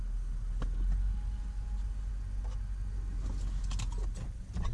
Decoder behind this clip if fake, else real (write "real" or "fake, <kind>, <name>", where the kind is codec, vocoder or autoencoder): real